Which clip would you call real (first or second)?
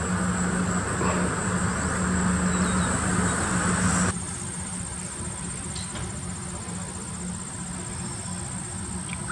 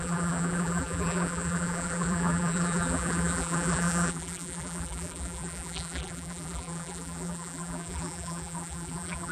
first